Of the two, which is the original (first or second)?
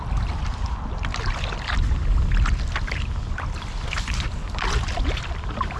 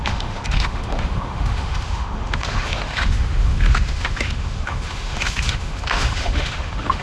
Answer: first